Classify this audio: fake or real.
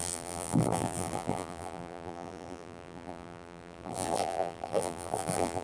fake